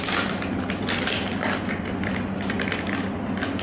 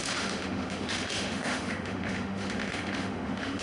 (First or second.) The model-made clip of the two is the second